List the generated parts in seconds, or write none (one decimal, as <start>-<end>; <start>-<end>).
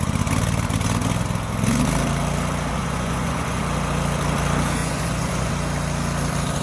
2.8-3.6; 4.8-5.5